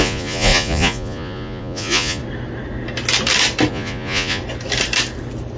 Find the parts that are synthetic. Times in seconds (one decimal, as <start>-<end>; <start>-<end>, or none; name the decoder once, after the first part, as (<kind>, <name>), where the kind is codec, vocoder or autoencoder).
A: 0.0-2.2 (vocoder, Vocos); 3.7-4.4